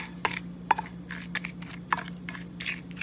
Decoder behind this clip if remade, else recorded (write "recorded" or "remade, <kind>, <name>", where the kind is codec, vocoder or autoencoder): recorded